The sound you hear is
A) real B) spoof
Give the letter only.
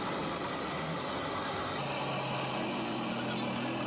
A